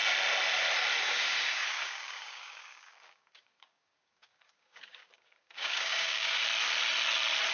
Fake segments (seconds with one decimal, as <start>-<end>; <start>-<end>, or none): 1.0-6.4